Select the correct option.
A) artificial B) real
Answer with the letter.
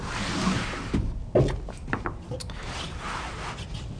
B